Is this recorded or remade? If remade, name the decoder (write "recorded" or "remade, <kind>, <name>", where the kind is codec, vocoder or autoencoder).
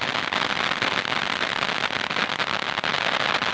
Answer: recorded